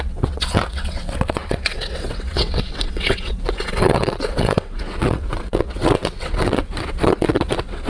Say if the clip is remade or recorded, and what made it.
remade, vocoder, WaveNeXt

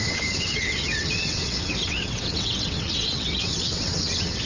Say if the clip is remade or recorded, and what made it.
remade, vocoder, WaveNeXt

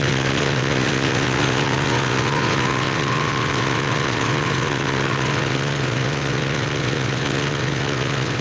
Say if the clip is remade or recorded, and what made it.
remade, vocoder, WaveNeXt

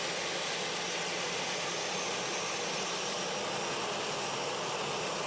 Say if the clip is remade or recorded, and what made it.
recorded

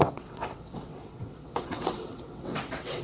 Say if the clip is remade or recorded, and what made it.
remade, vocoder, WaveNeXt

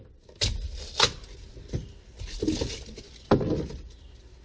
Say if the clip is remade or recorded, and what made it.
recorded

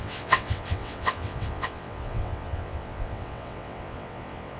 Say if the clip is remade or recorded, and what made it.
remade, vocoder, WaveNeXt